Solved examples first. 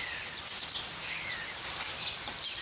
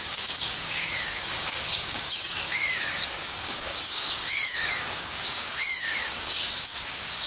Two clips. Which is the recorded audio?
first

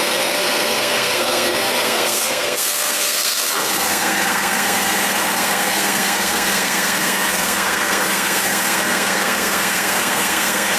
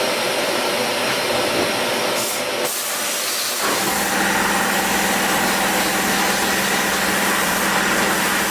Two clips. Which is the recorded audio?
second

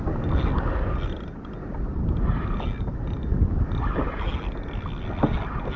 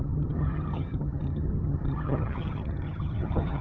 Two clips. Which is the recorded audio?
first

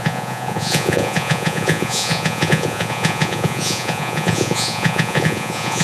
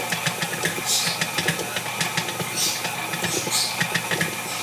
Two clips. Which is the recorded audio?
second